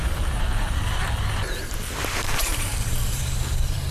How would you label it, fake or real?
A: fake